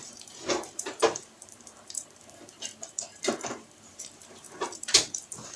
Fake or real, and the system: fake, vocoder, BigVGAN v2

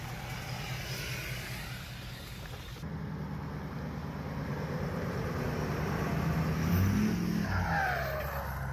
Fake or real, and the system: real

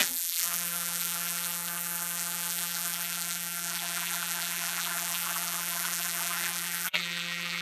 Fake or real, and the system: fake, vocoder, BigVGAN v2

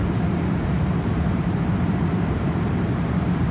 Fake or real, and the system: fake, vocoder, BigVGAN v2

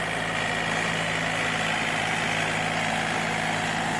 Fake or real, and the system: real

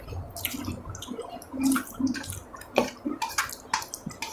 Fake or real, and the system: fake, vocoder, BigVGAN v2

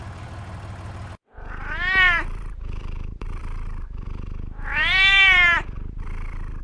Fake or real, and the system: fake, vocoder, BigVGAN v2